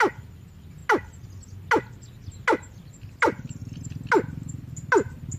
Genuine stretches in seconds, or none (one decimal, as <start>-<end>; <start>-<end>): 0.0-5.4